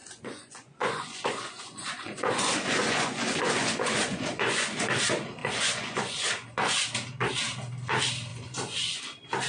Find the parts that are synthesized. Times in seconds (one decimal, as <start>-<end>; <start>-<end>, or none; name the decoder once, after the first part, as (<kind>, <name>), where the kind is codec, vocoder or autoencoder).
0.0-5.0 (vocoder, Vocos); 5.4-6.8; 8.3-9.0